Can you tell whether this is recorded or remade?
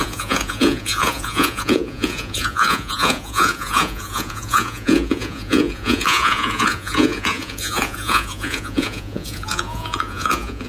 remade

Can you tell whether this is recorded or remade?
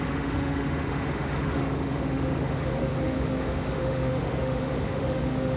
remade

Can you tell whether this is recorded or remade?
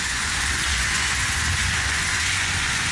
remade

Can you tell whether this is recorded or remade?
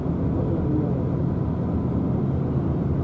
recorded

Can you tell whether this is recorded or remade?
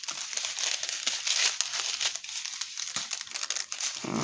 recorded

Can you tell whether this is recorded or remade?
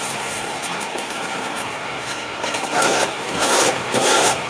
remade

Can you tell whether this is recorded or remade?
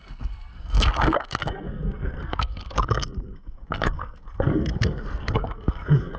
remade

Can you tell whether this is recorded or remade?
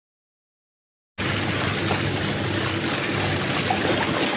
recorded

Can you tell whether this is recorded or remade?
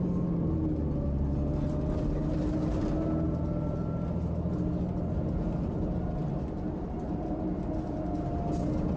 recorded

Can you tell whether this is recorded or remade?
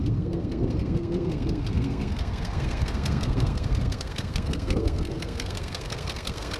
remade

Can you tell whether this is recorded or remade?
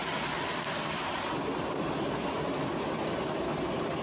recorded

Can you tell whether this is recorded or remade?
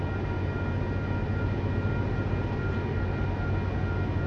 recorded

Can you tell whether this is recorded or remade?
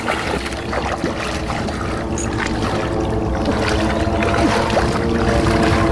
recorded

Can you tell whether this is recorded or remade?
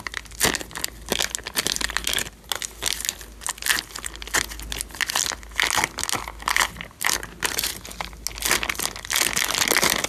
recorded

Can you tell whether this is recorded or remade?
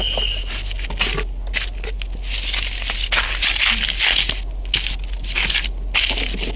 recorded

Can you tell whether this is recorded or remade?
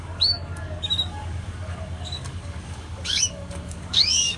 remade